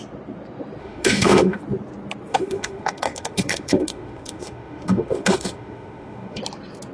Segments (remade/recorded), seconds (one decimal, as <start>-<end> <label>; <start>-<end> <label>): 0.0-0.8 recorded; 0.8-1.6 remade; 1.6-2.3 recorded; 2.3-6.4 remade; 6.4-6.9 recorded